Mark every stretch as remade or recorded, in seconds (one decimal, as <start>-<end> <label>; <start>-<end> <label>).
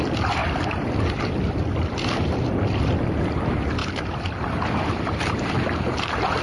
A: 0.0-0.4 recorded; 0.4-2.8 remade; 2.8-6.4 recorded